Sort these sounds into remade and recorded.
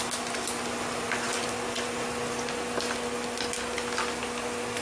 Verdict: recorded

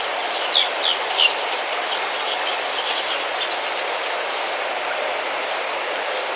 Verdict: recorded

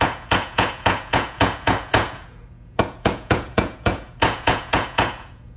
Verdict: remade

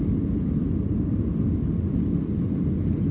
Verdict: recorded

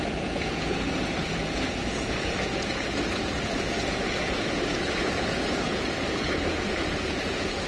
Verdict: remade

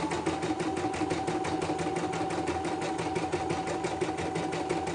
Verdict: recorded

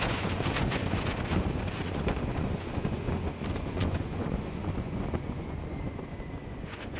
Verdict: remade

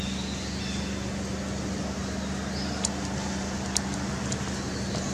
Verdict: recorded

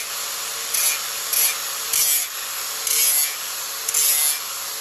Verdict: recorded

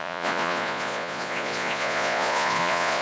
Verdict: remade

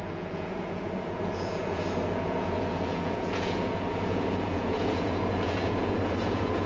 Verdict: remade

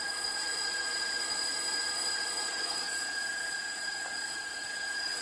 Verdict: remade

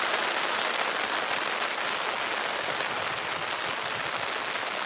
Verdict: recorded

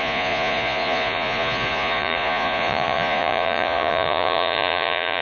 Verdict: remade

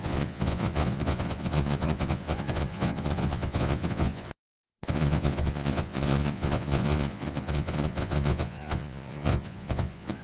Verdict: remade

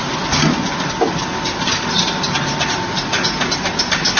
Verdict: recorded